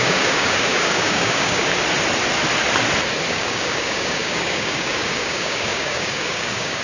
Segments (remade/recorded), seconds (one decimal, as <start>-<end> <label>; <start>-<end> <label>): 0.0-1.6 remade; 1.6-3.3 recorded; 3.3-6.8 remade